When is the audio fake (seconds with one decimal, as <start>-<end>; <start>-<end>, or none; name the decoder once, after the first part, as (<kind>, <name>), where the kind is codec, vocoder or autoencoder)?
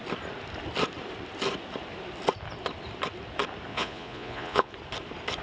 3.7-4.7 (vocoder, Vocos)